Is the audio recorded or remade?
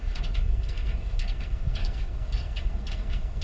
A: remade